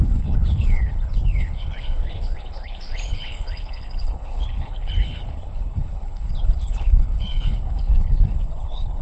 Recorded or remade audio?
remade